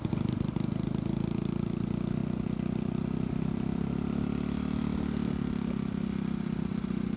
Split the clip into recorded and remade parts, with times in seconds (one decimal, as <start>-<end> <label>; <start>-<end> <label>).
0.0-7.2 recorded